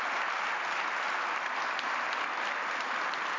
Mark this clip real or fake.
real